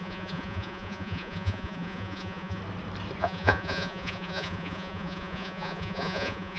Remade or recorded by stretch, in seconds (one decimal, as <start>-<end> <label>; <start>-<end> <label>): 0.0-2.6 remade; 2.6-3.2 recorded; 3.2-6.6 remade